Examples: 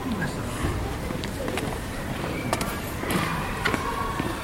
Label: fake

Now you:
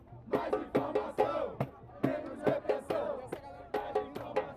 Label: real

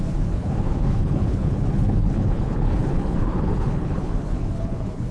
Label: fake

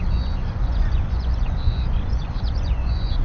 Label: fake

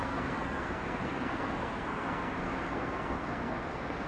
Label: fake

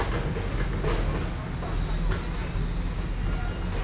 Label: real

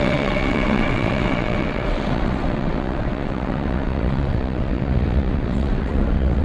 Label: fake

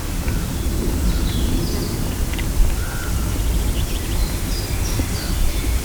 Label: fake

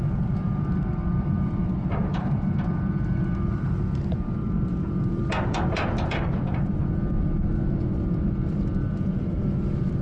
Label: fake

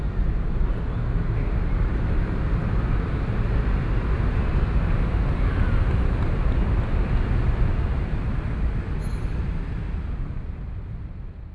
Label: real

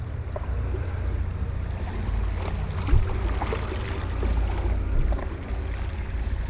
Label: real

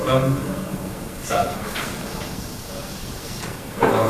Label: fake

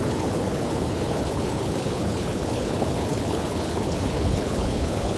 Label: fake